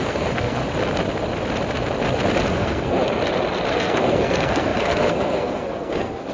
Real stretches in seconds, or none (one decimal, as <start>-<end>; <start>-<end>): 0.6-2.5; 3.0-3.7